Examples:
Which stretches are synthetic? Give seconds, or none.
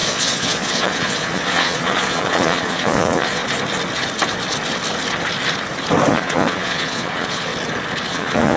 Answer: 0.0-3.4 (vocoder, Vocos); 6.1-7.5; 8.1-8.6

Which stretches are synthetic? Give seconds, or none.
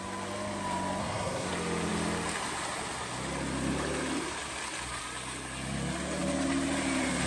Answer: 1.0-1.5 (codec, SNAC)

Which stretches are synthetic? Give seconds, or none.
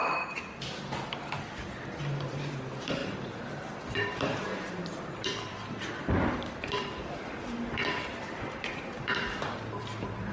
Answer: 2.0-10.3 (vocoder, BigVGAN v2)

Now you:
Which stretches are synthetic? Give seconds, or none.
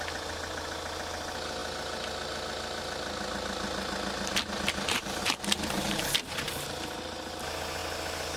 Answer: none